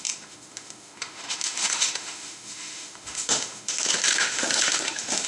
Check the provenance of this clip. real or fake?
fake